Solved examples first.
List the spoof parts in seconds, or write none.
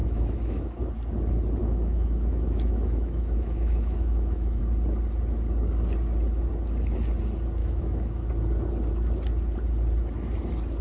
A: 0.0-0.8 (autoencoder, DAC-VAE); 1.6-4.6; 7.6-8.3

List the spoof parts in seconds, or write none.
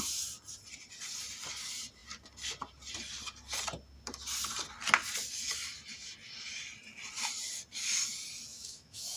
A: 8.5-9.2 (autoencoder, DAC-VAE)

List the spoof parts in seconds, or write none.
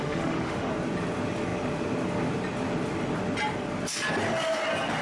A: 0.0-0.7 (autoencoder, DAC-VAE)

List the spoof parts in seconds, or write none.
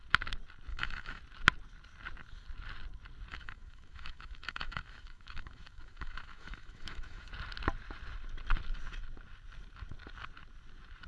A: 0.7-1.2 (autoencoder, DAC-VAE); 3.3-7.3